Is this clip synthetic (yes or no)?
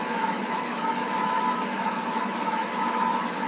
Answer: yes